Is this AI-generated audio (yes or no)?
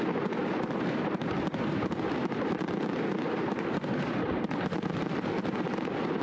no